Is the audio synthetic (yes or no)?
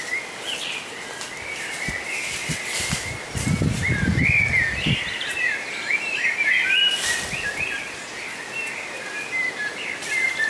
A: no